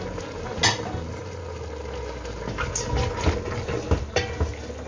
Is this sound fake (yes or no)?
no